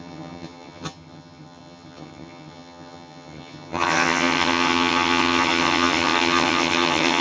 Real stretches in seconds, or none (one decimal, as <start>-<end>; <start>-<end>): none